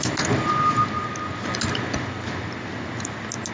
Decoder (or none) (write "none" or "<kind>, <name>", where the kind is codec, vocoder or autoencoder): none